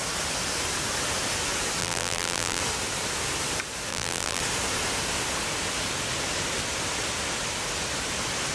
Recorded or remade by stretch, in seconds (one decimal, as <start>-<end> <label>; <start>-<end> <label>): 0.0-1.8 recorded; 1.8-2.6 remade; 2.6-3.9 recorded; 3.9-4.4 remade; 4.4-8.5 recorded